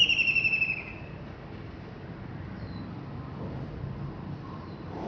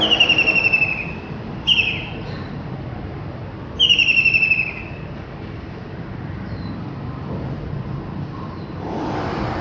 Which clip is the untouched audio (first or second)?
first